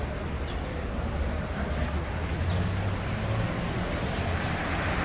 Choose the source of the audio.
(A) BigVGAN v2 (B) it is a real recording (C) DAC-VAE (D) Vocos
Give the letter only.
B